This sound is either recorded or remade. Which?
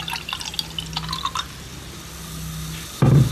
recorded